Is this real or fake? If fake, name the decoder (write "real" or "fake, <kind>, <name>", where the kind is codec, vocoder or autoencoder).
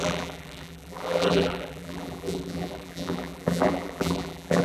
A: fake, vocoder, BigVGAN v2